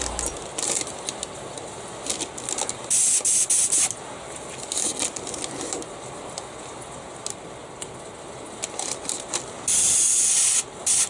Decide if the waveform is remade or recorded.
recorded